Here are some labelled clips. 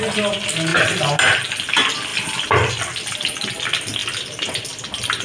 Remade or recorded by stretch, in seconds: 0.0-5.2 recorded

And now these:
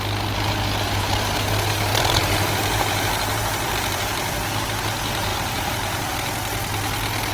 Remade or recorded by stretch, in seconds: 0.0-1.9 recorded; 1.9-3.7 remade; 3.7-5.3 recorded; 5.3-6.1 remade; 6.1-7.3 recorded

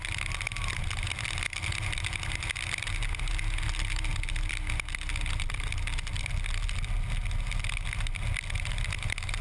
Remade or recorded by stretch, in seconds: 0.0-9.4 recorded

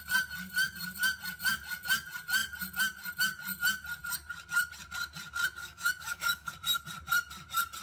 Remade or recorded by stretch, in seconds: 0.0-5.6 recorded; 5.6-6.5 remade; 6.5-7.8 recorded

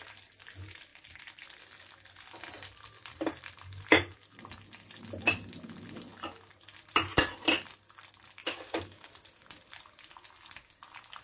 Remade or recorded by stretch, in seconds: 0.0-8.4 recorded; 8.4-9.2 remade; 9.2-11.2 recorded